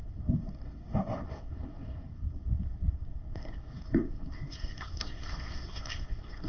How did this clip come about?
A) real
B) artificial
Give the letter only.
B